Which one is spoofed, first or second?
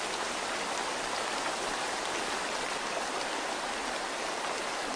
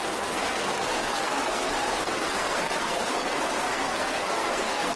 second